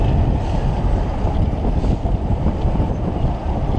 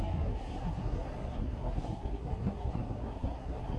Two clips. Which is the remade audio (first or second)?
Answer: second